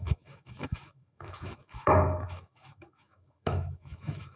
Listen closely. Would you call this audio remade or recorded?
remade